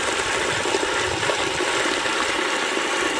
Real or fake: fake